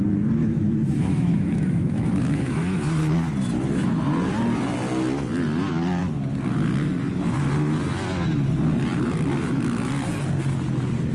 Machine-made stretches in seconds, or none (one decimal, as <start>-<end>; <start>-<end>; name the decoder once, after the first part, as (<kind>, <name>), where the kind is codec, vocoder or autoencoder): 0.4-3.0 (autoencoder, DAC-VAE)